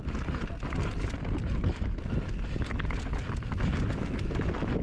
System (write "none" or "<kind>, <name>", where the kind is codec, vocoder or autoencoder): none